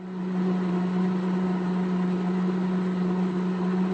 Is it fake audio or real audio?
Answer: real